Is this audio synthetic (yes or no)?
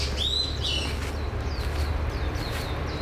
no